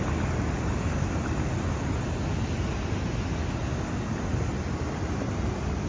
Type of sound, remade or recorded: recorded